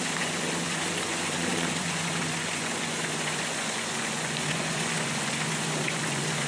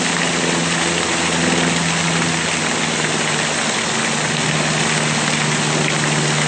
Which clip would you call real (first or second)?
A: second